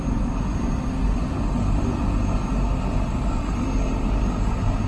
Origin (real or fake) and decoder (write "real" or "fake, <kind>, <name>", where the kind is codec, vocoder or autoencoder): real